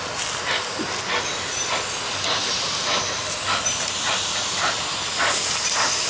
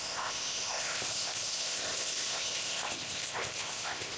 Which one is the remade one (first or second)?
second